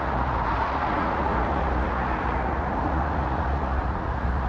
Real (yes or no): no